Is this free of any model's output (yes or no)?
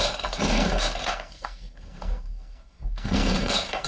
no